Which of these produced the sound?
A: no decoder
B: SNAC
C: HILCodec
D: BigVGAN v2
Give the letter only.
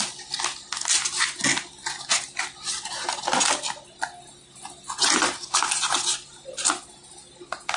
A